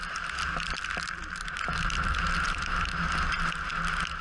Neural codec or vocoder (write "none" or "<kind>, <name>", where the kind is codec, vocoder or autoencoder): none